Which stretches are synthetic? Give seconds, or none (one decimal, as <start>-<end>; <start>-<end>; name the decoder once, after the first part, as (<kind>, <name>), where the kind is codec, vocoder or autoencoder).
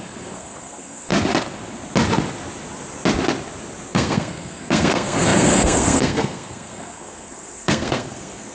0.0-1.1 (codec, SNAC); 3.9-8.5